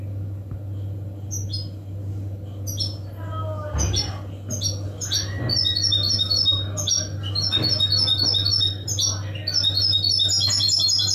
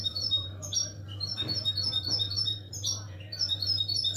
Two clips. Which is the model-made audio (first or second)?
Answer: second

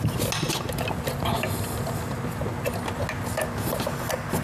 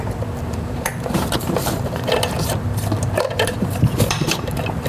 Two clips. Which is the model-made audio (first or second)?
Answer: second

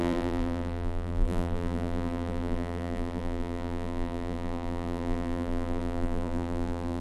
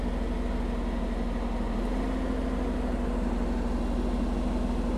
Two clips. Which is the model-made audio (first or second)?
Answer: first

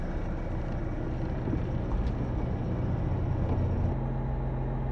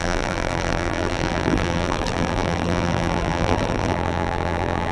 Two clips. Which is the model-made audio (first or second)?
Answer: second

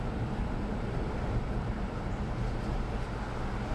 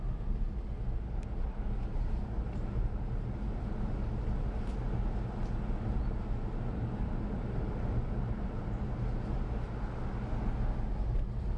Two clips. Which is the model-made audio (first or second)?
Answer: first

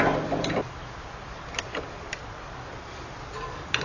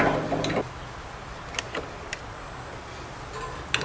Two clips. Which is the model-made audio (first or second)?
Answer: first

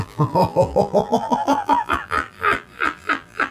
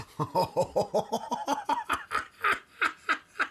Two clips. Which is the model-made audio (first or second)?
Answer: first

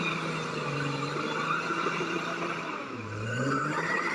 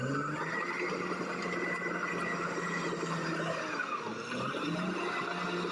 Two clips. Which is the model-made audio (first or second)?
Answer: first